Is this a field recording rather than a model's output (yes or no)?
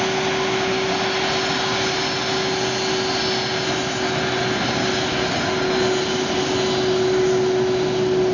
yes